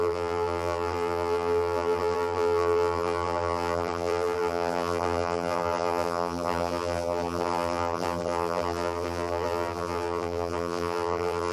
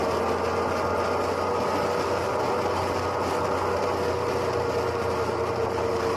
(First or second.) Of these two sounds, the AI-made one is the first